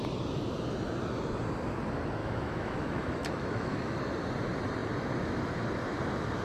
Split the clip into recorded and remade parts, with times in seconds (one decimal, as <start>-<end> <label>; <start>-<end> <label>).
0.0-2.2 recorded; 2.2-4.0 remade; 4.0-6.4 recorded